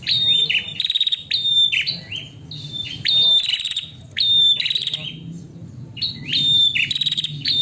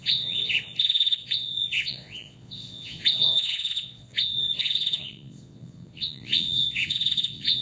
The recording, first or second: first